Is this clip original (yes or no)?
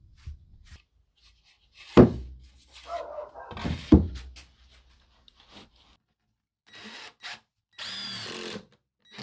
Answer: yes